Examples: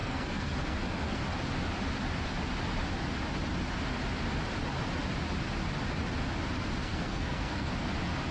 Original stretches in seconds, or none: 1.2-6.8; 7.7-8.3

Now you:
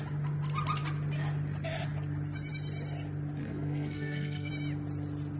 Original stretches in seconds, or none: 0.0-3.4; 4.5-5.4

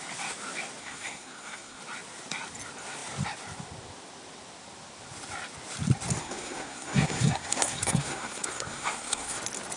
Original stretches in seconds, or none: 0.0-0.8; 1.8-6.2; 9.4-9.8

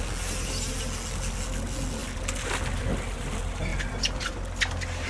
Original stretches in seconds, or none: 0.0-5.1